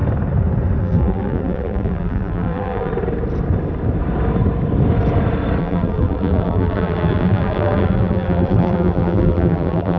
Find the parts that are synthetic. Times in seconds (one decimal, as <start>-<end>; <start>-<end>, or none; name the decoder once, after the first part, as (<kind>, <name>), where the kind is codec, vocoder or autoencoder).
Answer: 0.8-2.9 (vocoder, BigVGAN v2); 5.6-10.0